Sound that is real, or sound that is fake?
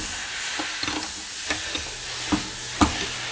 real